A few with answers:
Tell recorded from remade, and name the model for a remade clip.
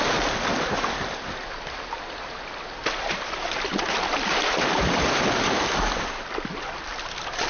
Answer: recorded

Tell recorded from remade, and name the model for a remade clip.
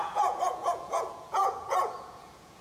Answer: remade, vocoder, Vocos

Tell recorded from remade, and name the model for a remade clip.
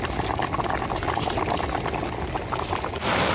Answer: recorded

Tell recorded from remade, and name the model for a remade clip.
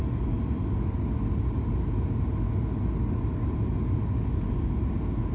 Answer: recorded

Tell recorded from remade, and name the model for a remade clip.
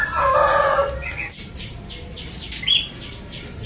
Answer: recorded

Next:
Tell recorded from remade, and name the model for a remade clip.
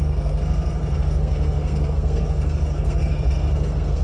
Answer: remade, codec, SNAC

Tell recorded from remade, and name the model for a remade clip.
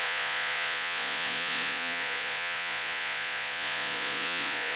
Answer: remade, vocoder, Vocos